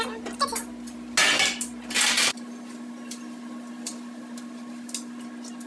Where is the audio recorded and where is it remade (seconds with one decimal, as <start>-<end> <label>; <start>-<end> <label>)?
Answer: 0.0-5.7 recorded